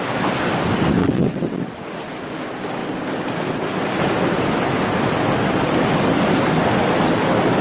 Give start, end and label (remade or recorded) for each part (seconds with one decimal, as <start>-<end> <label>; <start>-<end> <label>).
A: 0.0-1.0 recorded; 1.0-1.6 remade; 1.6-7.6 recorded